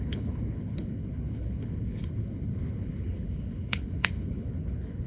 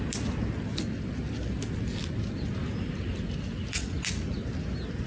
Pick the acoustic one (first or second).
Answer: second